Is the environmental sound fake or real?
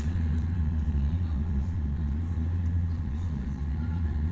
fake